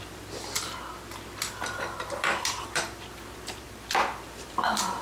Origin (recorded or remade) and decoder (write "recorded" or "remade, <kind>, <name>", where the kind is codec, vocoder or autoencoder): remade, vocoder, BigVGAN v2